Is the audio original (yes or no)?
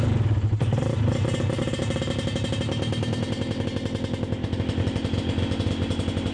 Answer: yes